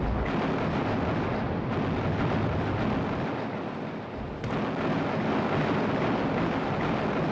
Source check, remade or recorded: recorded